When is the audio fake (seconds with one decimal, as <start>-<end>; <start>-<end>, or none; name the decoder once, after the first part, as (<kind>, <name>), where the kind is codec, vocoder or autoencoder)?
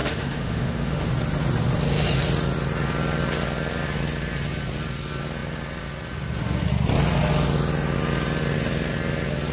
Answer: 0.0-1.1 (autoencoder, DAC-VAE)